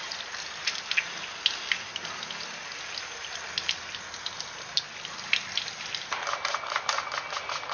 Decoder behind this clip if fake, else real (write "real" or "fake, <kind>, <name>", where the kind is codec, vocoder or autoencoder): real